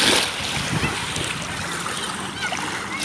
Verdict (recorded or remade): recorded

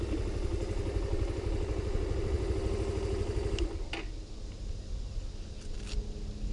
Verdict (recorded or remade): recorded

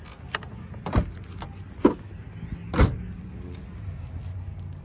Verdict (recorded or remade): recorded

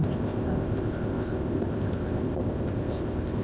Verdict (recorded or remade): remade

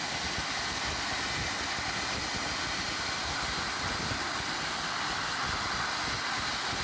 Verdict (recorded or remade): recorded